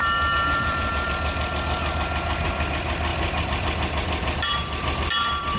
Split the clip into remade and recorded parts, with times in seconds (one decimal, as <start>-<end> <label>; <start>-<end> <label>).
0.0-1.1 remade; 1.1-3.1 recorded; 3.1-5.6 remade